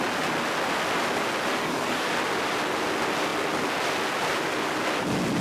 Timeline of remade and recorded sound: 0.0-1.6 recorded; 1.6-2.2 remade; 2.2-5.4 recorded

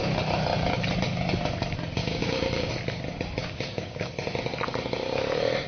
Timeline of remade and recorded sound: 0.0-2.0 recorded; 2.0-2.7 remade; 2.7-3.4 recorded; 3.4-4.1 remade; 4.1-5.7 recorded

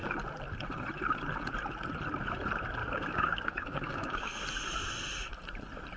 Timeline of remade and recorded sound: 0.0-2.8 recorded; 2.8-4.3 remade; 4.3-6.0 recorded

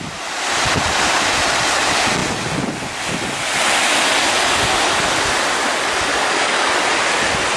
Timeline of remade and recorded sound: 0.0-6.1 recorded; 6.1-6.7 remade; 6.7-7.6 recorded

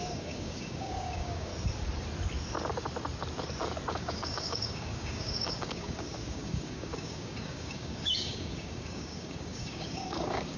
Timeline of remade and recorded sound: 0.0-1.5 remade; 1.5-3.9 recorded; 3.9-10.6 remade

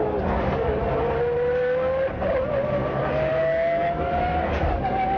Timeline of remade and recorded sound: 0.0-0.8 remade; 0.8-2.9 recorded; 2.9-5.2 remade